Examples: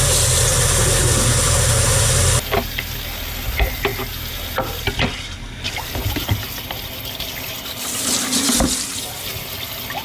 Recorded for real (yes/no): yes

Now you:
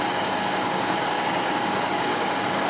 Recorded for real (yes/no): no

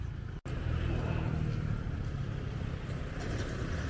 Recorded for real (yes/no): yes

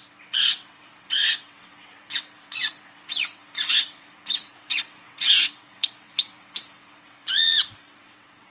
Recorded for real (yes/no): no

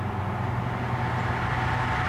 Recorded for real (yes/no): yes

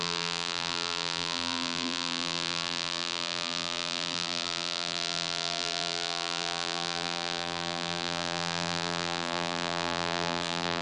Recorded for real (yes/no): no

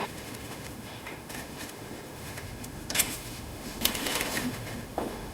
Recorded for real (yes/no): no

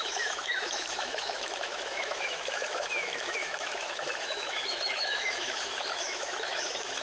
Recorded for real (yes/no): no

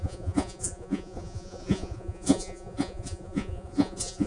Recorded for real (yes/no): no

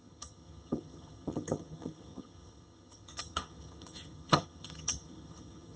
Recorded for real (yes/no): no